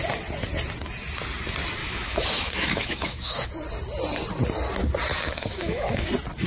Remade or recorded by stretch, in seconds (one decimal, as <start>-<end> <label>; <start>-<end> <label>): 0.0-1.8 recorded; 1.8-3.5 remade; 3.5-5.1 recorded; 5.1-6.1 remade; 6.1-6.5 recorded